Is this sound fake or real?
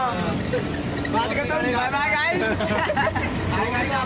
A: real